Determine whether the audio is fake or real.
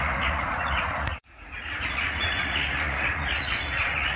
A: fake